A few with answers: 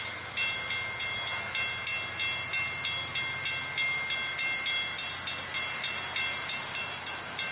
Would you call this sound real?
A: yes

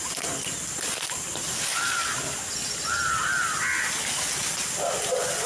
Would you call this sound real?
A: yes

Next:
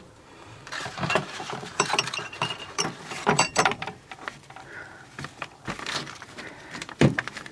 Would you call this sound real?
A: no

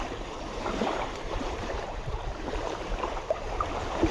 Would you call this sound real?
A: no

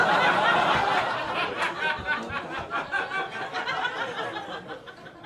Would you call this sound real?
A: yes